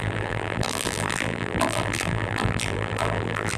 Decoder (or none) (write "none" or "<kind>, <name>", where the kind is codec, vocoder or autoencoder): vocoder, BigVGAN v2